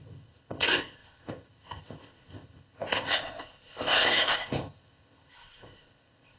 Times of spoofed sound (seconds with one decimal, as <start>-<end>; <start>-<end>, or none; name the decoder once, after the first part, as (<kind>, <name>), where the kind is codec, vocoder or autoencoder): 0.0-6.4 (codec, ZipCodec)